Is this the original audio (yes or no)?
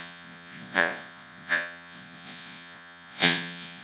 no